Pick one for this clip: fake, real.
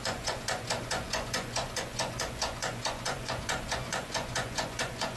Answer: fake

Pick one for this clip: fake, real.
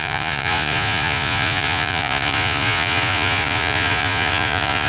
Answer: fake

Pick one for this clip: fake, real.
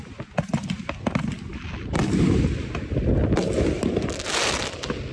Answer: real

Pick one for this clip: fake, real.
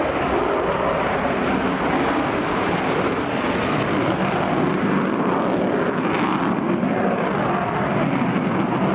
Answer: real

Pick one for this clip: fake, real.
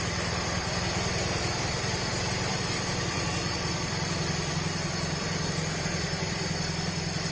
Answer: fake